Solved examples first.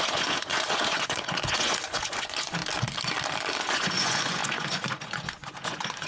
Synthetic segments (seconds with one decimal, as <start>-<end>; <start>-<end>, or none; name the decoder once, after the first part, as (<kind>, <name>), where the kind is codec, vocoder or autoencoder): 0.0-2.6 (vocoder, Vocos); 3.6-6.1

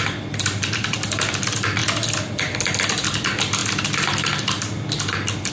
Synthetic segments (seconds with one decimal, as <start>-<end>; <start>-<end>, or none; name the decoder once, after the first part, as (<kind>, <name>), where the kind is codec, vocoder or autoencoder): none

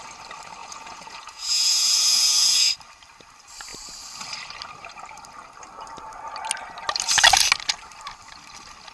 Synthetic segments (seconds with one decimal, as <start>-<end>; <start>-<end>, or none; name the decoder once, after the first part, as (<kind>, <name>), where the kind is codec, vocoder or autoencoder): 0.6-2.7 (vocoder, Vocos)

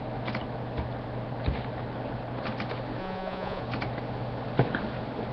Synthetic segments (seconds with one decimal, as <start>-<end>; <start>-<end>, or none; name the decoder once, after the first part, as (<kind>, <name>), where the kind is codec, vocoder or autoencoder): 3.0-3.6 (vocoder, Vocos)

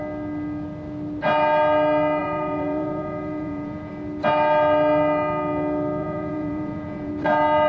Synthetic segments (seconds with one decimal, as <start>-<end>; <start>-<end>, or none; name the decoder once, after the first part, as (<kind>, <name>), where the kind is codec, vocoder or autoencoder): 2.2-3.9 (vocoder, Vocos); 6.0-7.1

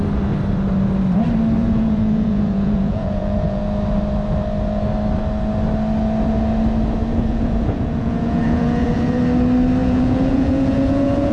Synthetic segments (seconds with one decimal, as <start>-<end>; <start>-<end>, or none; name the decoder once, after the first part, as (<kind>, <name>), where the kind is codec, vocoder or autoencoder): 1.6-3.6 (vocoder, Vocos); 7.0-9.2; 9.8-11.3

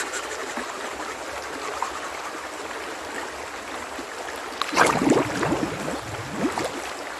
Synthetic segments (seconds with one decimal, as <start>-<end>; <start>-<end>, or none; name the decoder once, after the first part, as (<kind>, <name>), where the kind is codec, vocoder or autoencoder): none